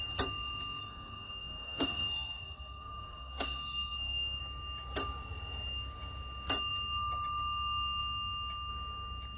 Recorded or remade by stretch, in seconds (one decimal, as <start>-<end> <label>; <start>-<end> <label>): 0.0-0.8 recorded; 0.8-4.4 remade; 4.4-9.4 recorded